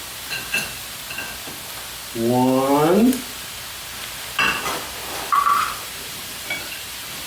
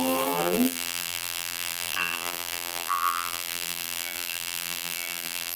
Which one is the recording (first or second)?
first